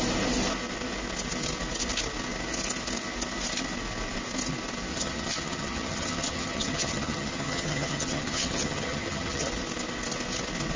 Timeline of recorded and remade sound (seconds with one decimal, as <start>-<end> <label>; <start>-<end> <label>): 0.0-4.9 recorded; 4.9-9.5 remade; 9.5-10.8 recorded